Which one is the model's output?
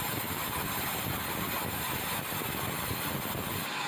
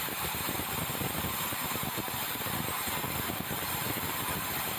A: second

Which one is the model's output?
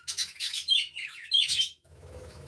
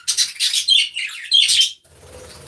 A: first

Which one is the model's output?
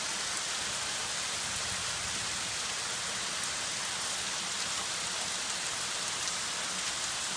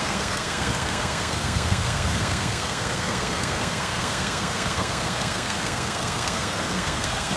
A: second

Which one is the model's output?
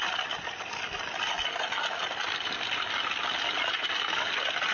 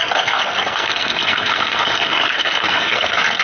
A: second